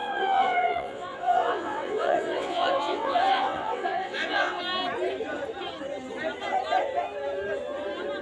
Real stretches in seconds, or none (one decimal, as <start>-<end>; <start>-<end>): 4.6-8.2